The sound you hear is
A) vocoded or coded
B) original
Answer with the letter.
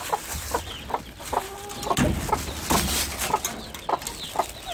B